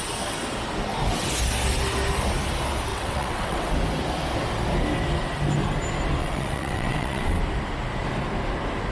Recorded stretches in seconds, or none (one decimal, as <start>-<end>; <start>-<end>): 0.0-2.9; 3.7-6.2; 7.4-8.9